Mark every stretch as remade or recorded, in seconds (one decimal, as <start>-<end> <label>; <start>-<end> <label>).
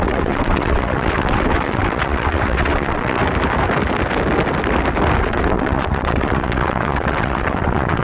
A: 0.0-3.2 remade; 3.2-5.2 recorded; 5.2-8.0 remade